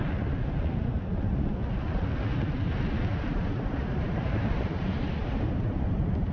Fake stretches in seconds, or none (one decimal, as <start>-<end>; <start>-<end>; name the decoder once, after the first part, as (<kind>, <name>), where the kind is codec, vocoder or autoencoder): 3.1-6.3 (vocoder, BigVGAN v2)